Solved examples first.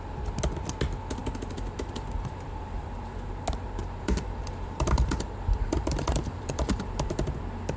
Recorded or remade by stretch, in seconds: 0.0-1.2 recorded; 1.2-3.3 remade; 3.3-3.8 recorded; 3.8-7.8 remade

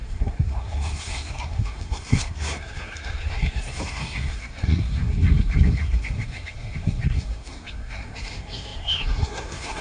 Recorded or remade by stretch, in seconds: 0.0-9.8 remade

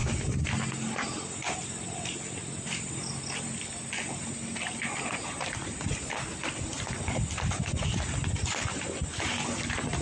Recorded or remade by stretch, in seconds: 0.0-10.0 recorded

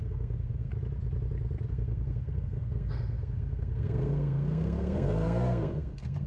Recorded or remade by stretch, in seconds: 0.0-0.7 remade; 0.7-1.7 recorded; 1.7-6.3 remade

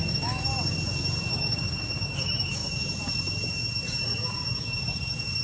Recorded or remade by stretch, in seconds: 0.0-0.5 remade; 0.5-1.3 recorded; 1.3-2.6 remade; 2.6-5.4 recorded

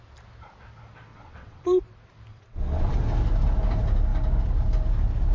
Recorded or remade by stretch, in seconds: 0.0-1.1 recorded; 1.1-1.8 remade; 1.8-2.3 recorded; 2.3-3.0 remade; 3.0-5.3 recorded

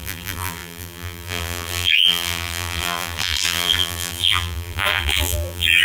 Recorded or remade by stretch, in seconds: 0.0-5.8 remade